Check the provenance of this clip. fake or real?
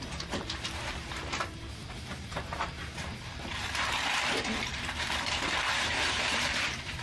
fake